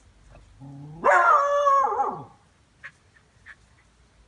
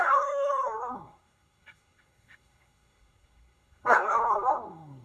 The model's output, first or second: second